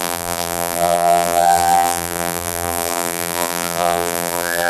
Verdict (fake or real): fake